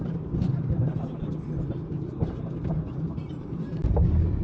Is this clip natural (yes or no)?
no